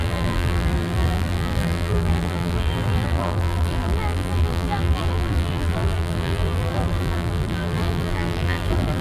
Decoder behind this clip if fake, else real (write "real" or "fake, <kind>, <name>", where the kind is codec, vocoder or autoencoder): fake, vocoder, BigVGAN v2